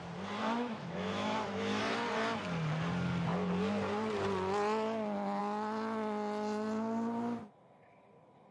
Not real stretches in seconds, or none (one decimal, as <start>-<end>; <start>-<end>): 0.4-1.8